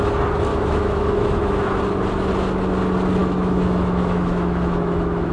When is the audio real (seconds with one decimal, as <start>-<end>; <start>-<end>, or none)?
0.0-0.5; 1.7-3.2